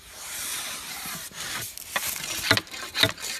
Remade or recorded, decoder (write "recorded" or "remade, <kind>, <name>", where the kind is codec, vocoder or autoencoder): recorded